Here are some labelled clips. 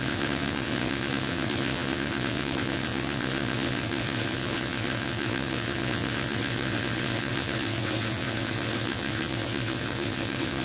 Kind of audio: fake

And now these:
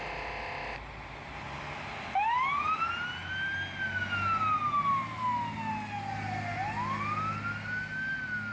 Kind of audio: real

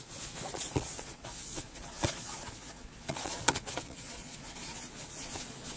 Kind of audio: fake